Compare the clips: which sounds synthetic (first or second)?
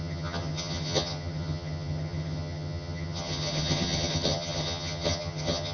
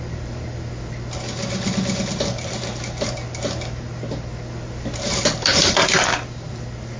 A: first